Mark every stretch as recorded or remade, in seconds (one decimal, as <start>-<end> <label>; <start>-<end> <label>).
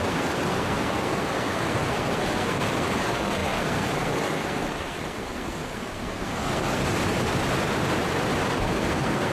0.0-6.8 remade; 6.8-8.5 recorded; 8.5-9.3 remade